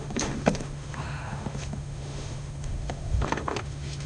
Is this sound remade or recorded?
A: remade